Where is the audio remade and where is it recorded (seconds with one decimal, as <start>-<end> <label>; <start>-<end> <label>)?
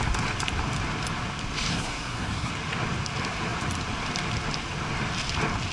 0.0-1.7 recorded; 1.7-2.5 remade; 2.5-5.7 recorded